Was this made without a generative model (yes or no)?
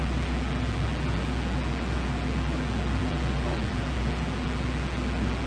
no